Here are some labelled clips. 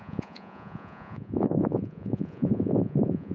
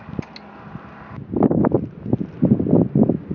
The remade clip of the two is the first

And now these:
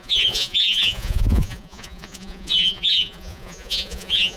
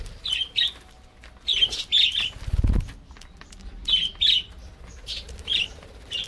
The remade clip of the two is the first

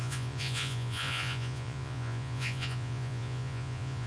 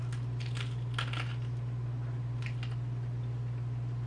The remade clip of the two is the first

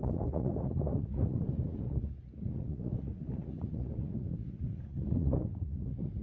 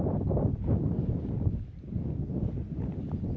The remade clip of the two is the first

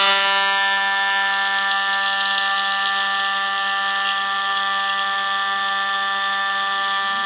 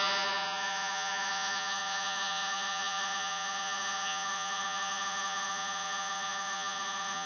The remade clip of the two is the second